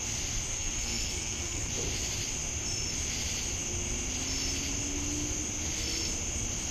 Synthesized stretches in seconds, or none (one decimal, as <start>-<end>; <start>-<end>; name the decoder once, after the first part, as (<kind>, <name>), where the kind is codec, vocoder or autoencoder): 0.5-1.7 (codec, SNAC)